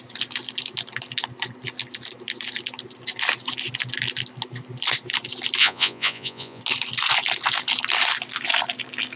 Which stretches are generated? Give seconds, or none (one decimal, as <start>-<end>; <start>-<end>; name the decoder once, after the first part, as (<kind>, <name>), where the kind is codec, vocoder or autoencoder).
5.6-6.6 (vocoder, Vocos)

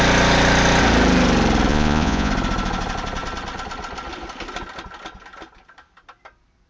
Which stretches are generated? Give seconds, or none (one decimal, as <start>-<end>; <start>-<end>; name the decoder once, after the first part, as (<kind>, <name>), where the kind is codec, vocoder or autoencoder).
1.7-2.3 (vocoder, Vocos)

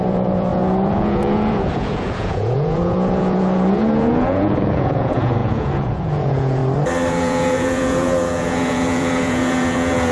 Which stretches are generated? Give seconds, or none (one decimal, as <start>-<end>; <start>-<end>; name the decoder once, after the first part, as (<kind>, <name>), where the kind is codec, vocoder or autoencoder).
0.0-6.6 (vocoder, Vocos); 7.1-10.1

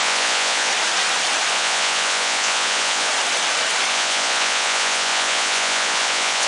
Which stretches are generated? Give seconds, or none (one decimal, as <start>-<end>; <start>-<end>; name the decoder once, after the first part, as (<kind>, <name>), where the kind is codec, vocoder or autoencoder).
0.0-0.7 (vocoder, Vocos); 1.5-3.1; 3.9-6.5

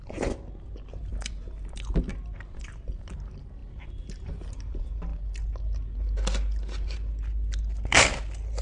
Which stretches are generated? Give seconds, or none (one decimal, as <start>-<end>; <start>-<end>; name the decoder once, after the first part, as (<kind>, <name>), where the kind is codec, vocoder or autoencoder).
none

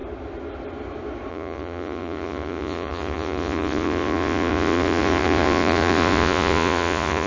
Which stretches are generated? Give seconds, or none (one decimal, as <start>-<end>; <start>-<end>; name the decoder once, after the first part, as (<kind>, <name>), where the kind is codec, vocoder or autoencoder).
1.3-7.3 (vocoder, Vocos)

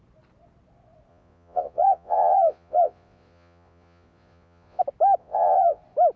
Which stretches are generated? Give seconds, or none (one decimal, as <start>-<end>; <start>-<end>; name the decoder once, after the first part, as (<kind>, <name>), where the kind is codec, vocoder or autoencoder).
1.1-4.8 (vocoder, Vocos); 5.2-5.8

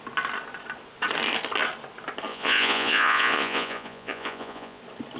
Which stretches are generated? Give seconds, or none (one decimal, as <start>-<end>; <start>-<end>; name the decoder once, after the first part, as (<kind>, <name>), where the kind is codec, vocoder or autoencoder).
2.3-4.8 (vocoder, Vocos)